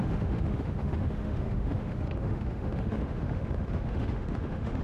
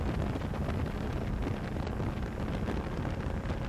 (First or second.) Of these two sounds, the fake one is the first